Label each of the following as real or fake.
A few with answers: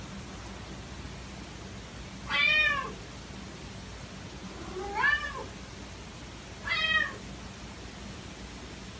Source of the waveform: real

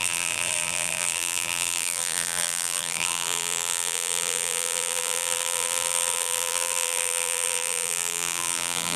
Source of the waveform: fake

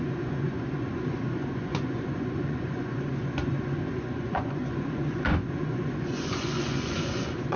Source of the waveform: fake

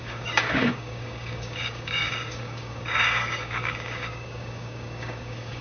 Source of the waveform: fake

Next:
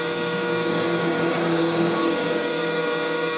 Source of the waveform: fake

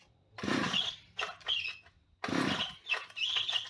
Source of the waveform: real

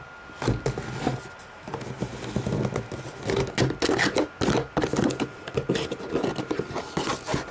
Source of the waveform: real